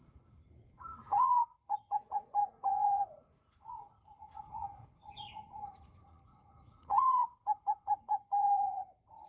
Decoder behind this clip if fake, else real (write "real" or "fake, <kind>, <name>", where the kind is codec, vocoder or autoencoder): fake, vocoder, Vocos